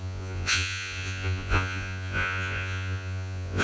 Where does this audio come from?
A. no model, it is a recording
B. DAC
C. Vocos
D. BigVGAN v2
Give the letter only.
C